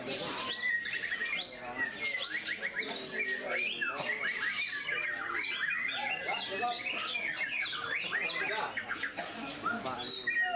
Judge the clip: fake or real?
real